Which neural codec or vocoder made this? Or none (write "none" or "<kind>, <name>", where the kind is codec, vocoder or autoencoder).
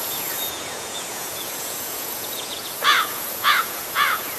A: vocoder, Vocos